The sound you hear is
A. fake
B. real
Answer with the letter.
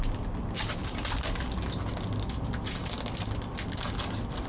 B